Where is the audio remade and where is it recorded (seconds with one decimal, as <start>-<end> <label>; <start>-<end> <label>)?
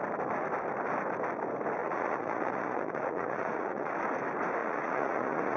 0.0-1.8 recorded; 1.8-3.9 remade; 3.9-4.6 recorded; 4.6-5.6 remade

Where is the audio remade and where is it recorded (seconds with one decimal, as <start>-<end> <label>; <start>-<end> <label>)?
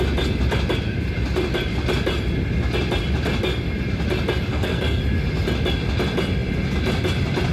0.0-4.5 recorded; 4.5-5.0 remade; 5.0-7.5 recorded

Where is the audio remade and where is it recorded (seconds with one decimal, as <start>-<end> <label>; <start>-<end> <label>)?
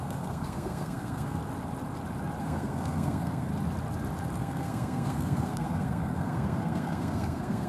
0.0-1.4 remade; 1.4-2.4 recorded; 2.4-3.5 remade; 3.5-4.4 recorded; 4.4-7.7 remade